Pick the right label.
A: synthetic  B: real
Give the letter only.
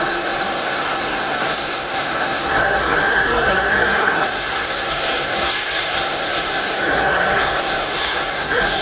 A